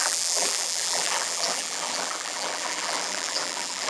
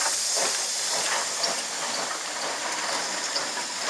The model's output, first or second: first